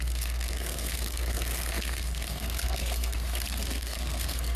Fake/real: fake